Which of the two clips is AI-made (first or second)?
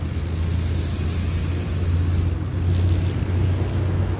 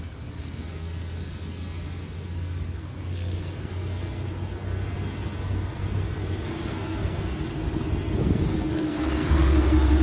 second